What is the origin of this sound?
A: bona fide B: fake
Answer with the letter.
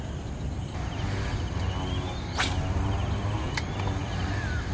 A